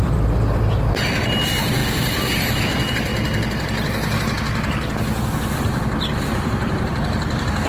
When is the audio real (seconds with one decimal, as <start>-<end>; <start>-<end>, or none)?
1.8-2.6; 3.1-5.5